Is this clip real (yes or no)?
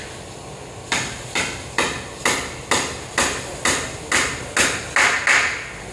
yes